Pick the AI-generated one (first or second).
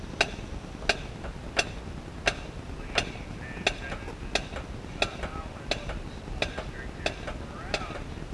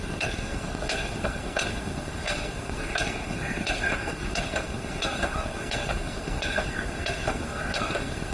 second